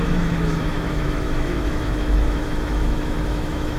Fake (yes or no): yes